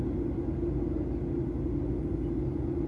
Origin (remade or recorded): recorded